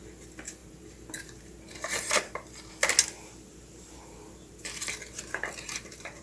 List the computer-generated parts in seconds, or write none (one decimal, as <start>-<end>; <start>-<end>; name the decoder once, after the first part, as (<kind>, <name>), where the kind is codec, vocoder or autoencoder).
0.6-2.7 (vocoder, BigVGAN v2); 3.5-6.2